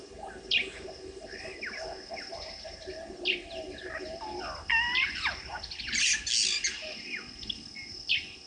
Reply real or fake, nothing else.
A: real